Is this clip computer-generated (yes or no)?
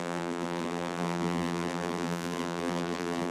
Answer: yes